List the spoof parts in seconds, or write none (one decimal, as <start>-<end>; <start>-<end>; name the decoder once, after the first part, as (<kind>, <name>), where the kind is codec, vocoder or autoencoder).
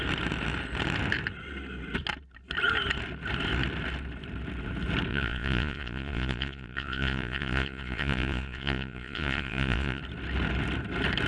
5.1-10.0 (vocoder, Vocos)